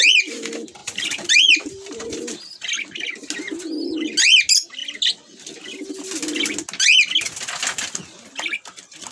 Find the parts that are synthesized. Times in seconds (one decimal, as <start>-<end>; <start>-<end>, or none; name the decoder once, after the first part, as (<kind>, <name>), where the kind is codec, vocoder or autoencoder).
0.8-2.4 (vocoder, BigVGAN v2)